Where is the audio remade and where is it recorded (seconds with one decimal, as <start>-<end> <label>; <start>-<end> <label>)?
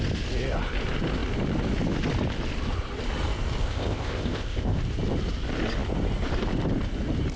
0.0-3.6 recorded; 3.6-4.8 remade; 4.8-7.4 recorded